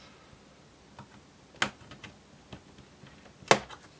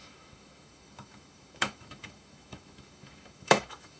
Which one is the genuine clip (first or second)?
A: first